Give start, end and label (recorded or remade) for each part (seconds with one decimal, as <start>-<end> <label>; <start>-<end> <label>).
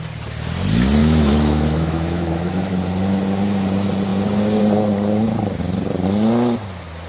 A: 0.0-1.0 recorded; 1.0-2.7 remade; 2.7-7.1 recorded